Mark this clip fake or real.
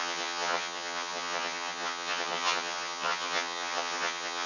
fake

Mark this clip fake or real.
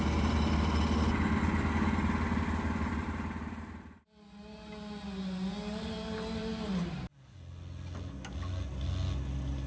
real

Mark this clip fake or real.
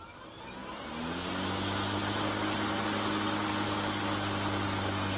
real